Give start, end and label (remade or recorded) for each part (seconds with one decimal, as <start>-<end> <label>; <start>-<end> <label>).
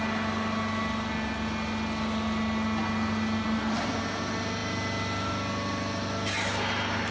0.0-7.1 recorded